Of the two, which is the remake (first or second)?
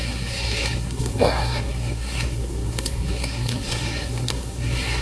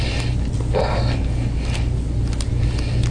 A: first